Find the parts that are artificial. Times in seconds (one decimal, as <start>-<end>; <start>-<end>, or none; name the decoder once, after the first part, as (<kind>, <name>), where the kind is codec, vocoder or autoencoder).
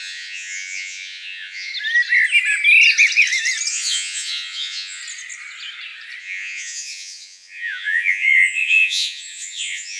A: 0.0-1.7 (vocoder, Vocos); 3.7-5.0; 6.2-10.0